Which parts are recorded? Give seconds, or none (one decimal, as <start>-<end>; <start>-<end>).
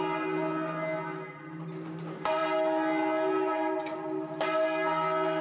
0.0-5.4